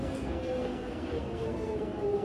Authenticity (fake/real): fake